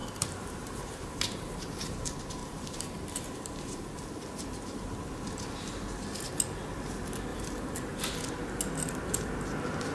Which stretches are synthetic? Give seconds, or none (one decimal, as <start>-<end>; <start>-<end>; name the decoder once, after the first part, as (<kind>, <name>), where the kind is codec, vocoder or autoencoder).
0.0-2.0 (vocoder, BigVGAN v2); 2.4-4.2; 7.3-8.1